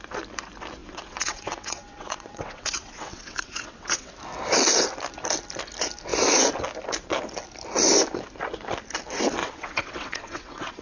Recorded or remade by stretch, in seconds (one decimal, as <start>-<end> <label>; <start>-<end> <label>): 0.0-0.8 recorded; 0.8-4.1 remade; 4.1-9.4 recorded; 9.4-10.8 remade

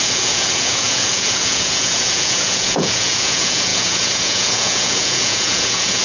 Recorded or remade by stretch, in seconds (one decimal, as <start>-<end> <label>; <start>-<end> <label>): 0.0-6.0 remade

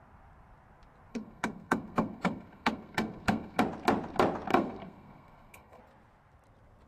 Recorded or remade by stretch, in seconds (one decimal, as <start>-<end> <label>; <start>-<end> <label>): 0.0-1.1 recorded; 1.1-3.6 remade; 3.6-4.5 recorded; 4.5-5.8 remade; 5.8-6.9 recorded